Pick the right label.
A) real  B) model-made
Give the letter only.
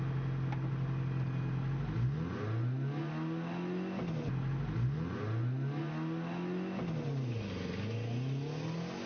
A